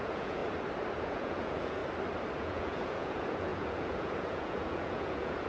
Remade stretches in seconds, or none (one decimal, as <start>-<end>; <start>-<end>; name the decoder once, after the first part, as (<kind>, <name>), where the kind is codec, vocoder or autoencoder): 0.0-0.4 (vocoder, Vocos); 1.0-1.8; 2.4-5.5

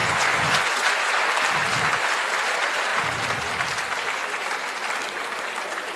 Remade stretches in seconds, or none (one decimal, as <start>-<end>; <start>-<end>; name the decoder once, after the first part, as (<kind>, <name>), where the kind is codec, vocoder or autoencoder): 0.0-1.1 (vocoder, Vocos)

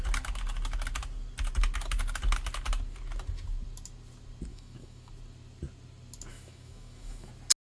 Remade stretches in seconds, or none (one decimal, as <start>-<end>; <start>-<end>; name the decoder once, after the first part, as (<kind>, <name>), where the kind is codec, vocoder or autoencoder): 4.5-5.1 (autoencoder, DAC-VAE); 6.3-7.3

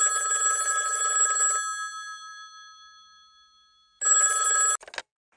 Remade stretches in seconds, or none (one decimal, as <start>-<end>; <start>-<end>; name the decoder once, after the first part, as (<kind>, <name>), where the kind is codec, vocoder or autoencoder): none

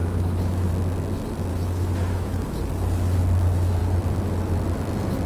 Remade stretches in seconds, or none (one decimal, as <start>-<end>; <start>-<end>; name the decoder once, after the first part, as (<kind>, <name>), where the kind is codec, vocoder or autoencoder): 0.0-0.7 (autoencoder, DAC-VAE); 1.5-2.7

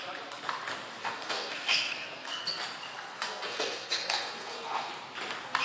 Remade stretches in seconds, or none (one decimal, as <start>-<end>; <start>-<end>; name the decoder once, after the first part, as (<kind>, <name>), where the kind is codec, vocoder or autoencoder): 1.0-2.6 (codec, SNAC); 3.1-4.9